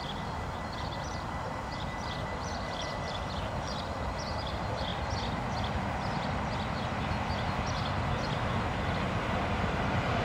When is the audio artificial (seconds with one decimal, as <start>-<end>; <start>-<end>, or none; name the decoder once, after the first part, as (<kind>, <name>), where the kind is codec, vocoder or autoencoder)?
0.0-4.9 (vocoder, BigVGAN v2); 8.6-10.2

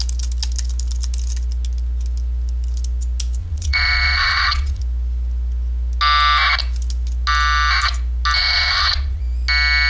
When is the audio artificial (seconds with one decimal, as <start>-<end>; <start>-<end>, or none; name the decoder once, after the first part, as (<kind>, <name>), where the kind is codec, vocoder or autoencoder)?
3.4-4.8 (vocoder, Vocos); 8.4-9.2

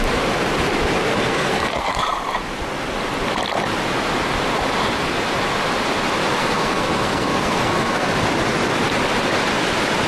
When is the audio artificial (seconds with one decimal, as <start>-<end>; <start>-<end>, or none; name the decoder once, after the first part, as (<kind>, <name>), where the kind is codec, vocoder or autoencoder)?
1.1-2.0 (codec, SNAC); 6.4-8.1

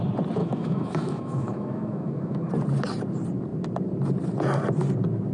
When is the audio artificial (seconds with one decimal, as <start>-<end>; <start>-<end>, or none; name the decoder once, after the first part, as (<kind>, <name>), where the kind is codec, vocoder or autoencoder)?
0.4-2.5 (autoencoder, DAC-VAE)